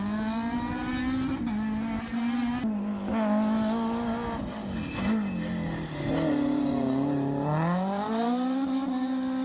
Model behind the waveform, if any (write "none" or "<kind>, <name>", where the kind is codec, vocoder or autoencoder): none